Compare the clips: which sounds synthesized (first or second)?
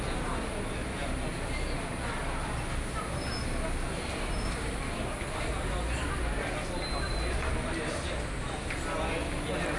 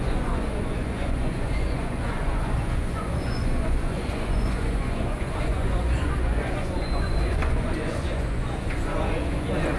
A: second